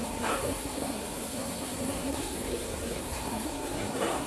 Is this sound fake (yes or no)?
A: yes